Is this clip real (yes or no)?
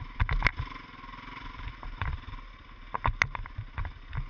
yes